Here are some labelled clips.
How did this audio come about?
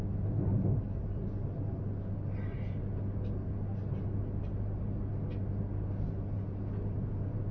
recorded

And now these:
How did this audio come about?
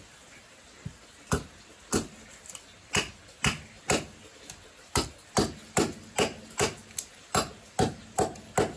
recorded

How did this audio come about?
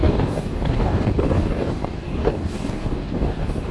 remade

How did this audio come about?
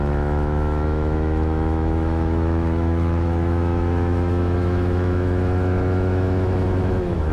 remade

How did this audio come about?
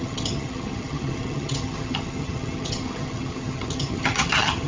remade